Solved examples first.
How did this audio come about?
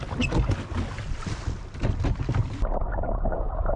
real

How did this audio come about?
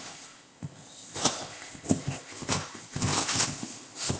fake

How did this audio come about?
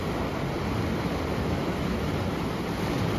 real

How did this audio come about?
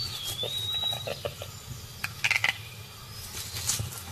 real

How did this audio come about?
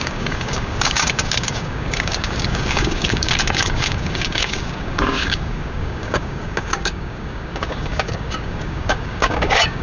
fake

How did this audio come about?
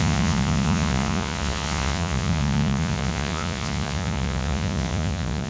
fake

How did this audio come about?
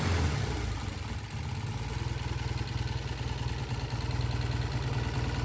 real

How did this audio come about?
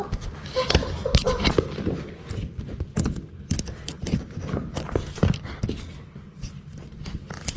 real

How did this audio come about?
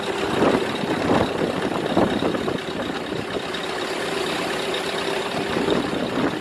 real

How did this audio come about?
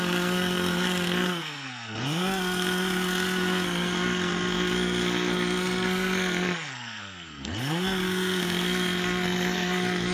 fake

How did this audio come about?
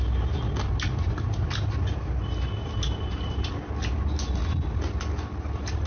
real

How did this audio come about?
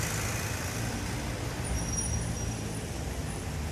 real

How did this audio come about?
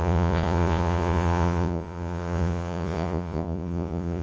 fake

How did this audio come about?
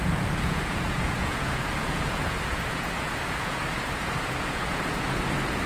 fake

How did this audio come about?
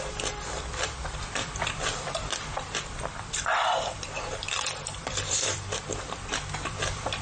fake